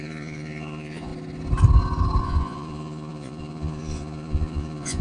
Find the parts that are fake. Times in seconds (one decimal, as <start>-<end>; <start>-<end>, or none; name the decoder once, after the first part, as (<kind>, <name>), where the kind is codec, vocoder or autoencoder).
0.0-1.1 (vocoder, Vocos); 2.2-5.0